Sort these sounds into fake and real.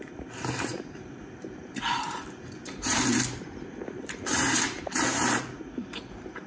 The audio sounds fake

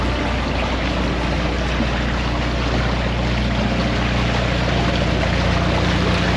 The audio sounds real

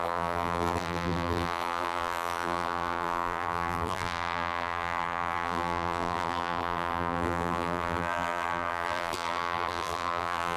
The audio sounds fake